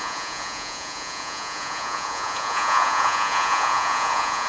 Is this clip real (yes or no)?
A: no